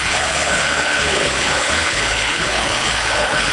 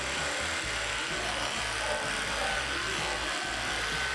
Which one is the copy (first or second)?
first